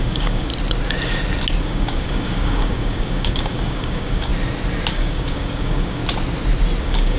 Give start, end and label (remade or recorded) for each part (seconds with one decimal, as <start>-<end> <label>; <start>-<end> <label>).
0.0-0.5 remade; 0.5-1.6 recorded; 1.6-4.3 remade; 4.3-4.9 recorded; 4.9-6.0 remade; 6.0-6.8 recorded; 6.8-7.2 remade